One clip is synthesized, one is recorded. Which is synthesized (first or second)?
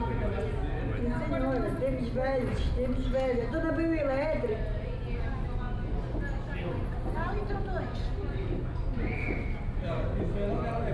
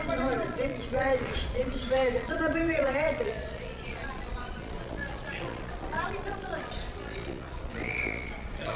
second